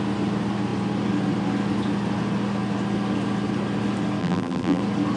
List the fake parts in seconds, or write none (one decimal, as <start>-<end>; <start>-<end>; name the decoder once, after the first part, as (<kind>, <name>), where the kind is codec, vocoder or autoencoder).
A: 4.2-4.8 (vocoder, BigVGAN v2)